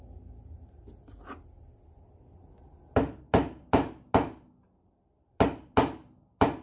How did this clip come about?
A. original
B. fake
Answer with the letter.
A